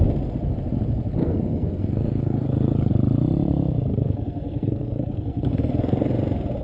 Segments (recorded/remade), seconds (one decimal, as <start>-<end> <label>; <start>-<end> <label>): 0.0-1.2 recorded; 1.2-2.9 remade; 2.9-3.9 recorded; 3.9-6.1 remade; 6.1-6.6 recorded